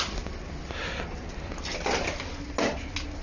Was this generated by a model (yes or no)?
no